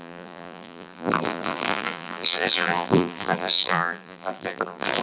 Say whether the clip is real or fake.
fake